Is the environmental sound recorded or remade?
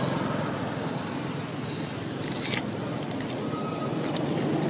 recorded